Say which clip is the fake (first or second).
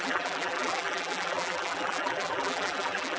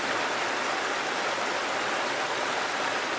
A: first